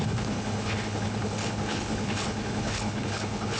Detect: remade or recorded remade